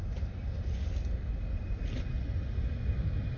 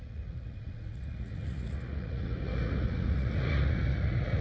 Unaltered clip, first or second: first